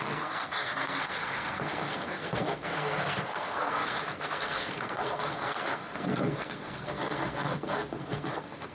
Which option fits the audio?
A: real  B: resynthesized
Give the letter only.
B